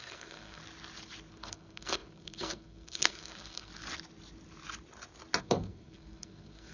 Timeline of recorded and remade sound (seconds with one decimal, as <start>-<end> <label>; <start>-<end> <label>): 0.0-0.6 remade; 0.6-1.3 recorded; 1.3-3.7 remade; 3.7-5.4 recorded; 5.4-6.7 remade